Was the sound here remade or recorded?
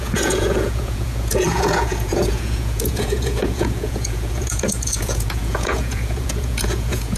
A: remade